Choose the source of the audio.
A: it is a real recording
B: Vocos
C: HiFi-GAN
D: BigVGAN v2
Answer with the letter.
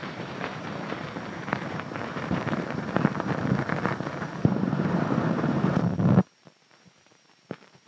D